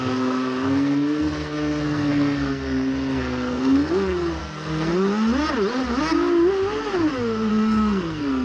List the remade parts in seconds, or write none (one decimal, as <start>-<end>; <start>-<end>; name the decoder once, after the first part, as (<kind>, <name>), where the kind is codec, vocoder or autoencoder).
0.0-4.9 (codec, SNAC); 7.5-8.4